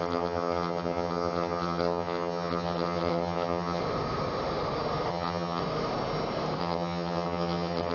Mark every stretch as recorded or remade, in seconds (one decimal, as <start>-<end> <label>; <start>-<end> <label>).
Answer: 0.0-3.8 remade; 3.8-5.1 recorded; 5.1-5.6 remade; 5.6-6.6 recorded; 6.6-7.9 remade